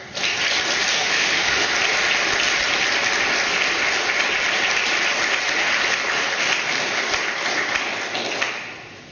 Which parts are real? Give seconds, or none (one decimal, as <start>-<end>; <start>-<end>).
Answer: 0.0-0.9; 1.7-9.1